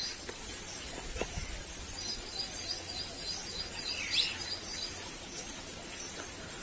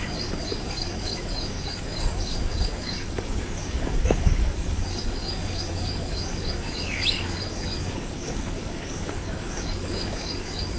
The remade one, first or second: second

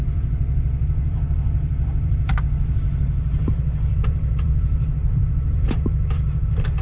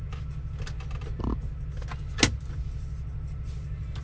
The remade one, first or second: first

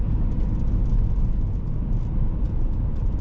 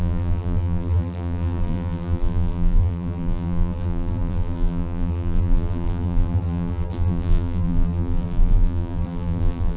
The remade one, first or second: second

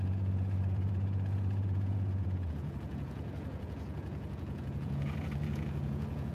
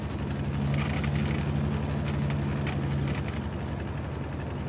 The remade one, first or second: first